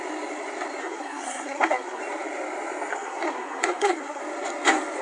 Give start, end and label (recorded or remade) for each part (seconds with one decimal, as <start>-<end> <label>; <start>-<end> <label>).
0.0-0.8 recorded; 0.8-2.0 remade; 2.0-2.9 recorded; 2.9-4.2 remade; 4.2-5.0 recorded